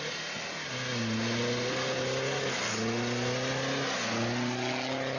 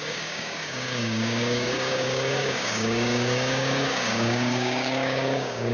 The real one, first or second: first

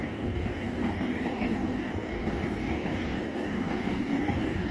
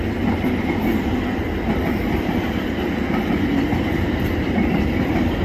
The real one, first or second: second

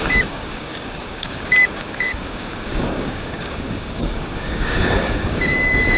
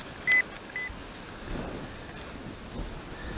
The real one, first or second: second